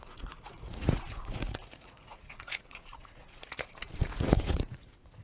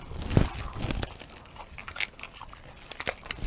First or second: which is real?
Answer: second